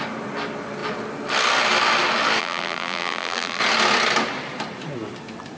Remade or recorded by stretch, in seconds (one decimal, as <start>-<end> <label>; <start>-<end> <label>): 0.0-2.4 recorded; 2.4-3.6 remade; 3.6-5.6 recorded